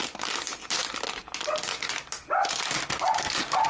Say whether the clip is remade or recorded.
recorded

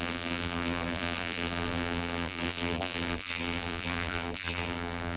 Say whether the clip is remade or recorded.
remade